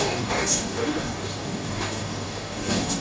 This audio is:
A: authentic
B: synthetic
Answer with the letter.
B